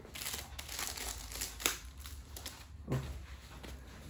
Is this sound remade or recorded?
recorded